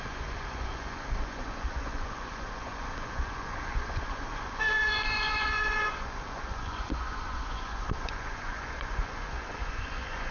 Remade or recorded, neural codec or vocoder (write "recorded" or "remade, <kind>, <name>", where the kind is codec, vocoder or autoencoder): remade, vocoder, Vocos